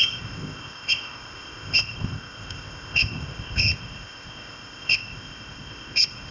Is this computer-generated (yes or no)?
yes